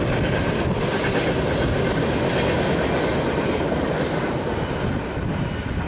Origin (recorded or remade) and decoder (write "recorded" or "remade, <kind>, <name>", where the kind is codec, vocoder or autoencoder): recorded